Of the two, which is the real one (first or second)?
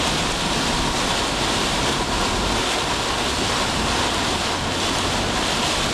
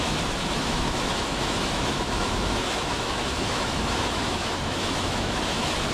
first